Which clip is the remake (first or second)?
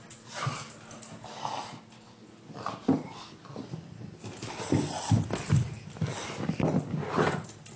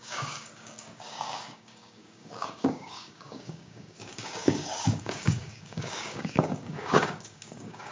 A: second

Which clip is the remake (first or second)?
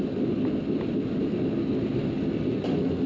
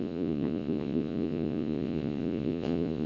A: second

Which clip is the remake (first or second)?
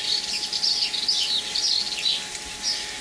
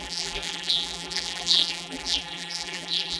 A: second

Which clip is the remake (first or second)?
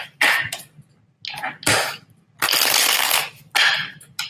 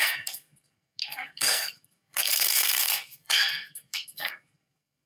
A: second